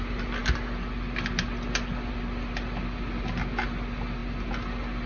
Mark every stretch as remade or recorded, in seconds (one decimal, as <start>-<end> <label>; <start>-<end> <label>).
0.0-5.1 recorded